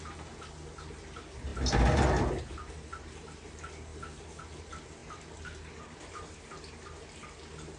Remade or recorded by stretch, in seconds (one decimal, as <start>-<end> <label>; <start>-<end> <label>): 0.0-7.8 recorded